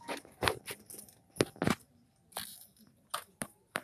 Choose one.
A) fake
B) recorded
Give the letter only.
B